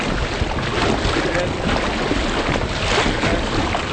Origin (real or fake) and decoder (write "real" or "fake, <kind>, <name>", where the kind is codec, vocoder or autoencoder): real